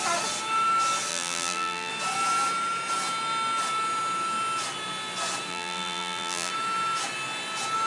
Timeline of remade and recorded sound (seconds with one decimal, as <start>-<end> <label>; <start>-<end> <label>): 0.0-1.1 recorded; 1.1-1.9 remade; 1.9-5.5 recorded; 5.5-6.5 remade; 6.5-7.9 recorded